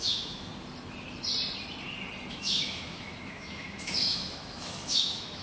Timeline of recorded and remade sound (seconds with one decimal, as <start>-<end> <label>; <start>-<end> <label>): 0.0-0.5 remade; 0.5-2.3 recorded; 2.3-5.4 remade